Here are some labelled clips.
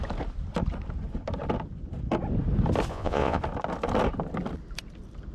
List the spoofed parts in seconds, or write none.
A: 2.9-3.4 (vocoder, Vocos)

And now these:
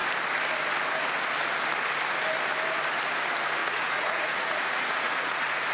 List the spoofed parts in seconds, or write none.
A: 3.6-5.7 (vocoder, Vocos)

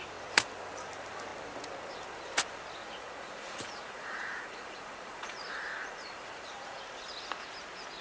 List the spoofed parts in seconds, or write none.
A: 2.8-6.8 (vocoder, Vocos)

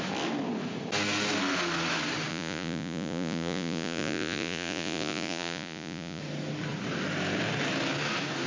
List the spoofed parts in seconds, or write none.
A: 2.3-6.2 (vocoder, Vocos)

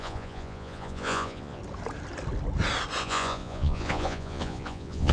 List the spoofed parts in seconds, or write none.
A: 0.0-1.6 (vocoder, Vocos); 3.0-5.1